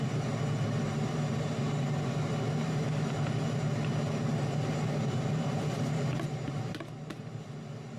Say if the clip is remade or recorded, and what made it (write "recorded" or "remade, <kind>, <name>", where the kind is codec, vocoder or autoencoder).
remade, vocoder, BigVGAN v2